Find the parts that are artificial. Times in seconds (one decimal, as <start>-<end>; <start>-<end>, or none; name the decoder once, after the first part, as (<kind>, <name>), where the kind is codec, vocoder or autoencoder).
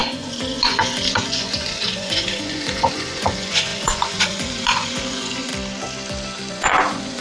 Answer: 0.0-5.5 (vocoder, Vocos); 6.5-7.2